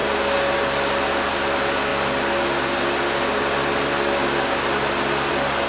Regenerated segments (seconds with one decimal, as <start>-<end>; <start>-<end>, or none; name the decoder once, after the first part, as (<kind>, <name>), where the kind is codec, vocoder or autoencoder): 0.0-1.9 (vocoder, BigVGAN v2); 5.3-5.7